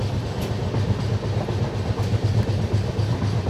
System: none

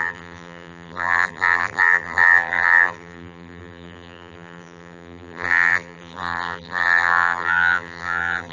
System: vocoder, BigVGAN v2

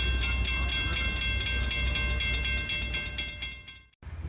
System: none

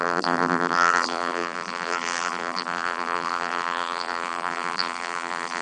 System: vocoder, BigVGAN v2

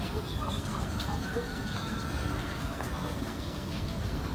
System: codec, SNAC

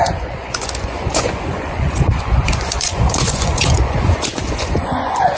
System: vocoder, Vocos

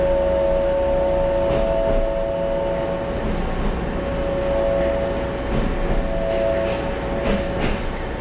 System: none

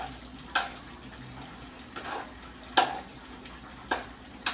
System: none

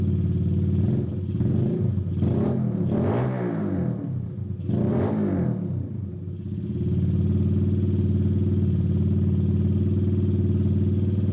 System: none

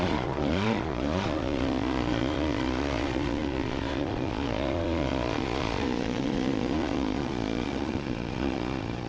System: vocoder, Vocos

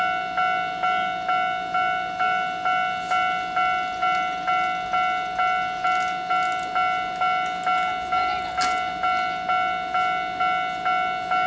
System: none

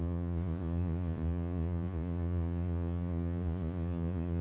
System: vocoder, Vocos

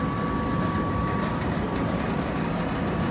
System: none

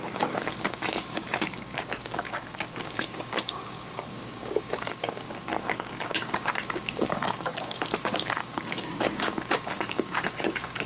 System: codec, DAC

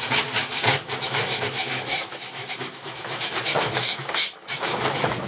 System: autoencoder, DAC-VAE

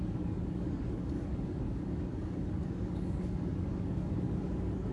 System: codec, DAC